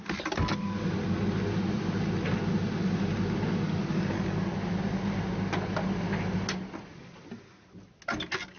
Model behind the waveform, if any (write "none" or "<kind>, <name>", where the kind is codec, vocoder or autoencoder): none